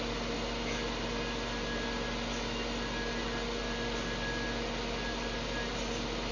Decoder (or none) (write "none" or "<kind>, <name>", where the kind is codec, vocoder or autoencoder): none